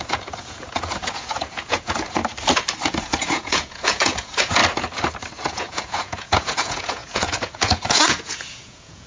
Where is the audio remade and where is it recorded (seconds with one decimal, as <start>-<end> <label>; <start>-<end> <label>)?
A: 0.0-2.2 remade; 2.2-3.0 recorded; 3.0-4.6 remade; 4.6-5.5 recorded; 5.5-9.1 remade